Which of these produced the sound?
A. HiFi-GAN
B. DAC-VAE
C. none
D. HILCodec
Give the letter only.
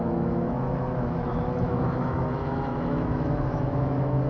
B